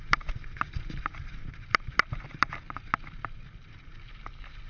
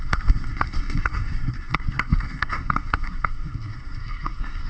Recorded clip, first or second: first